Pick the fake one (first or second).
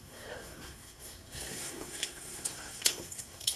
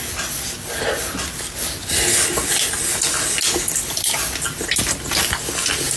first